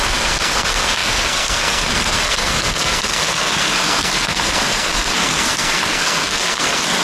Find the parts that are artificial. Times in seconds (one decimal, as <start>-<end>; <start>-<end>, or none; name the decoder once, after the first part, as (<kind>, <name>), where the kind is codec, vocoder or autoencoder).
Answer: 0.0-7.0 (codec, SNAC)